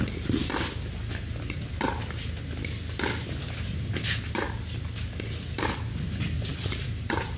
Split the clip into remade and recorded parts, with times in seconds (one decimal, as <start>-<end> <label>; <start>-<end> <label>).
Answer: 0.0-6.5 recorded; 6.5-7.4 remade